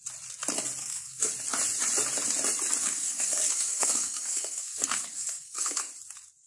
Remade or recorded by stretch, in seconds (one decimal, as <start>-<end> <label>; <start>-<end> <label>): 0.0-0.8 recorded; 0.8-1.3 remade; 1.3-2.8 recorded; 2.8-5.9 remade; 5.9-6.5 recorded